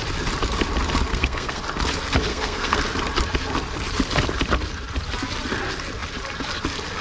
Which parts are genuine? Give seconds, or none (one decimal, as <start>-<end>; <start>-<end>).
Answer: 0.0-1.1; 1.6-2.3; 2.8-7.0